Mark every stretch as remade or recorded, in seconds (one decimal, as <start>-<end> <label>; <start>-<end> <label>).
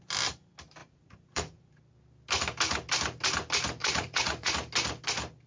0.0-0.8 recorded; 0.8-1.8 remade; 1.8-3.8 recorded; 3.8-4.5 remade; 4.5-5.5 recorded